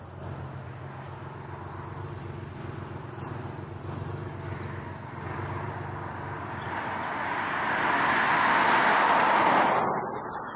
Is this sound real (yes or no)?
yes